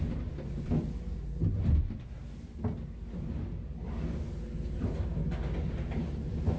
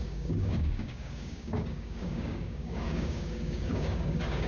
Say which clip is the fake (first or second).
second